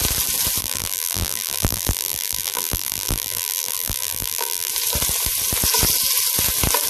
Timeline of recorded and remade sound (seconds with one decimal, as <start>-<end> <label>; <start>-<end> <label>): 0.0-0.6 recorded; 0.6-4.7 remade; 4.7-6.9 recorded